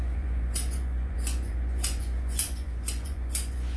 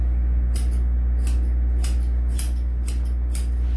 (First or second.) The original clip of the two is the second